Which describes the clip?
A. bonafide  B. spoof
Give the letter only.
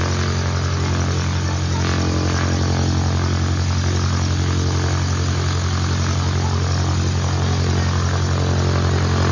A